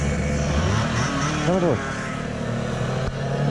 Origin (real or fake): real